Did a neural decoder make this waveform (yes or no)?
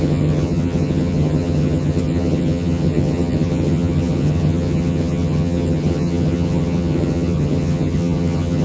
yes